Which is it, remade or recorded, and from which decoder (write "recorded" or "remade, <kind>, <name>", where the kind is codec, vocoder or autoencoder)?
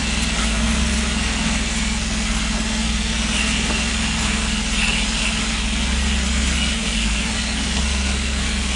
remade, codec, SNAC